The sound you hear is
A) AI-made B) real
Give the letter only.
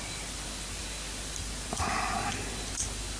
B